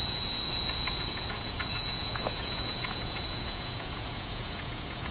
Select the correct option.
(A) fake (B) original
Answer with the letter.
A